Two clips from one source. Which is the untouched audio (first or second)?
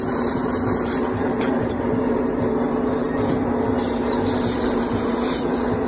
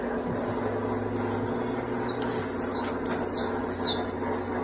second